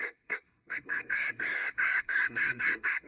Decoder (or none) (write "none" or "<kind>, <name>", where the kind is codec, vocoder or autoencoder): codec, SNAC